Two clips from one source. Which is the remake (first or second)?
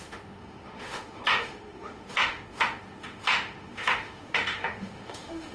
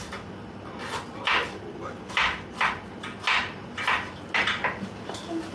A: first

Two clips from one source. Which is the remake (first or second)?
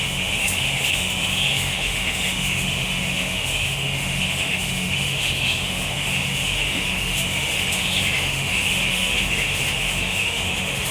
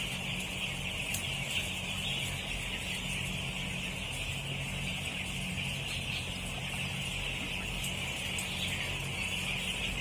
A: first